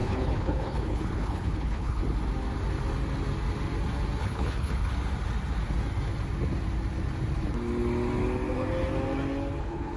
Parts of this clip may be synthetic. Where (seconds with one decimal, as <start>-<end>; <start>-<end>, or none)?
0.0-2.0; 4.2-4.9; 9.6-10.0